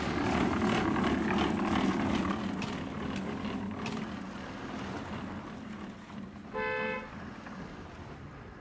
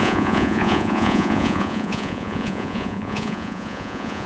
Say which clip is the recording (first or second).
first